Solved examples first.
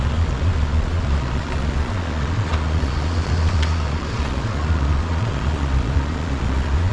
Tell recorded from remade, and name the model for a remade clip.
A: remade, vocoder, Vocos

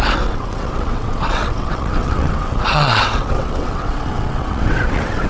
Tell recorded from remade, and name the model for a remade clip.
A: remade, vocoder, WaveNeXt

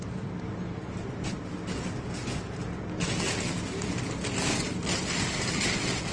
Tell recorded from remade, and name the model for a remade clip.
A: recorded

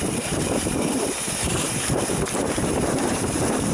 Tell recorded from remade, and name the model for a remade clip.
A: remade, vocoder, BigVGAN v2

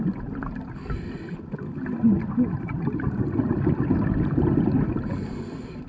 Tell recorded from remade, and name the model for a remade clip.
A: recorded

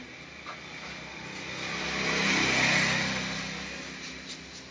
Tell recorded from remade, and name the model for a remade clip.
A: recorded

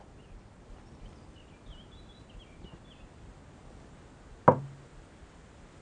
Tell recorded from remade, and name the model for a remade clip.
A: recorded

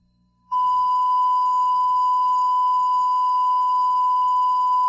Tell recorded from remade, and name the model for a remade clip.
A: remade, codec, SNAC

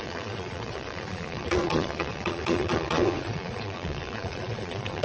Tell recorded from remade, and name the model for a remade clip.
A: remade, vocoder, Vocos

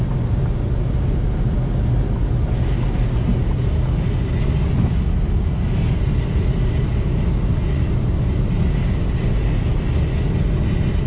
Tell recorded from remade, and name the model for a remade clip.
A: recorded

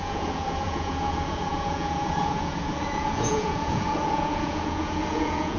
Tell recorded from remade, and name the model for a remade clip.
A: remade, vocoder, Vocos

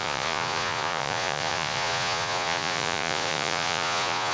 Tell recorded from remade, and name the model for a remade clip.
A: remade, vocoder, Vocos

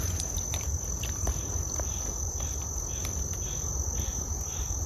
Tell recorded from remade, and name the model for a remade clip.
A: remade, vocoder, BigVGAN v2